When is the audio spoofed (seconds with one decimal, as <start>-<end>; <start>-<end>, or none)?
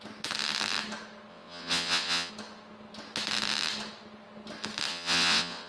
1.3-2.3; 4.9-5.7